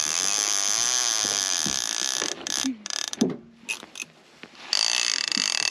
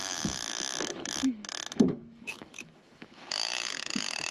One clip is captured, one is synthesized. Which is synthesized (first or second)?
second